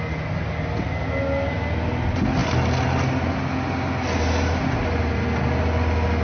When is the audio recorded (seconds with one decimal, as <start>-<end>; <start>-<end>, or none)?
0.0-6.2

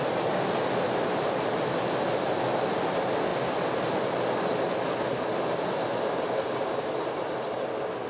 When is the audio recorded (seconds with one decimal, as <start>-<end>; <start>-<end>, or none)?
0.0-8.1

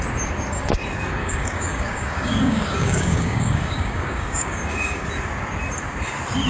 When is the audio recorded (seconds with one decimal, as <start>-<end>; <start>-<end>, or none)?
0.0-1.2; 5.1-6.5